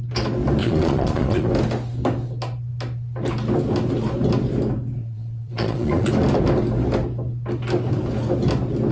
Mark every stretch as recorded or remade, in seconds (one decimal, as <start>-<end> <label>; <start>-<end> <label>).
0.0-0.6 recorded; 0.6-1.5 remade; 1.5-5.0 recorded; 5.0-6.1 remade; 6.1-8.9 recorded